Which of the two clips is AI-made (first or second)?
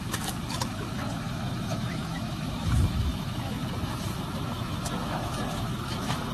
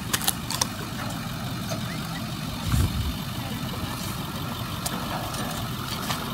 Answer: first